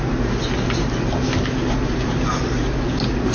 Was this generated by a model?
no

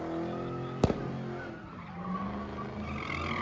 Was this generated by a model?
no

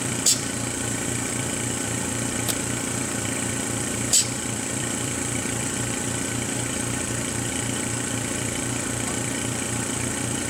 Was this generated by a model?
yes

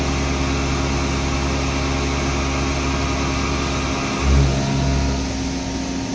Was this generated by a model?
no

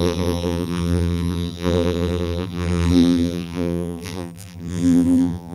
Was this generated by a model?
yes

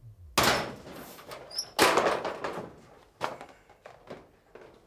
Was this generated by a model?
no